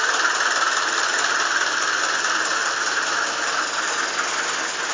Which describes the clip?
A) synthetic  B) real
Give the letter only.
B